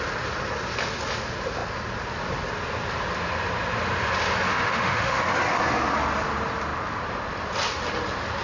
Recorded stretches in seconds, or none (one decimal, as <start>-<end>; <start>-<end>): 0.0-4.5; 5.2-8.4